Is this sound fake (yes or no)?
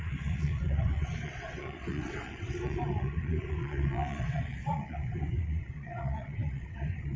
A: yes